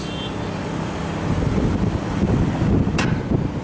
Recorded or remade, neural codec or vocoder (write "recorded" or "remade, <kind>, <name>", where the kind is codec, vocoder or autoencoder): recorded